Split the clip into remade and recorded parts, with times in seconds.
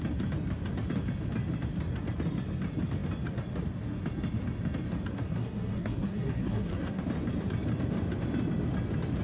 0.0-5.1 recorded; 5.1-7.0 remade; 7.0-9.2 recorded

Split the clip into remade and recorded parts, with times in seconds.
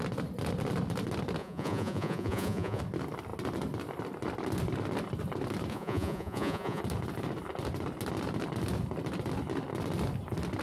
0.0-1.4 recorded; 1.4-2.8 remade; 2.8-5.7 recorded; 5.7-6.8 remade; 6.8-10.6 recorded